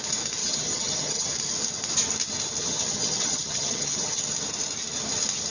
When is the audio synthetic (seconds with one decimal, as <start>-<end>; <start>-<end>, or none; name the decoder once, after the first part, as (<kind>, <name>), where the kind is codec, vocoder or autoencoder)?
0.4-1.3 (vocoder, HiFi-GAN); 2.6-4.2